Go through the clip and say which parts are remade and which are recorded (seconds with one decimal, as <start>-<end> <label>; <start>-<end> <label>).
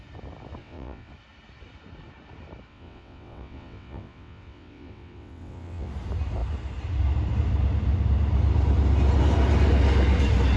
0.0-0.6 recorded; 0.6-1.1 remade; 1.1-2.7 recorded; 2.7-5.9 remade; 5.9-10.6 recorded